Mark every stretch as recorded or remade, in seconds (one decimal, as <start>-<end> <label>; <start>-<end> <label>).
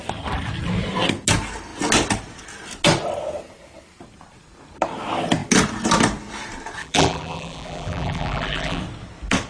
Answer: 0.0-6.8 recorded; 6.8-8.8 remade; 8.8-9.5 recorded